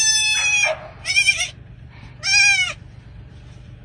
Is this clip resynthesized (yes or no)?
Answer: no